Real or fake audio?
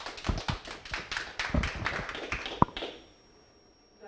real